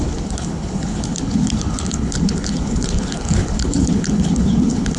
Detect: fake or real fake